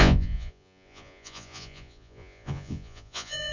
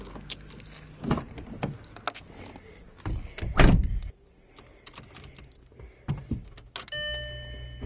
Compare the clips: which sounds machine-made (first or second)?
first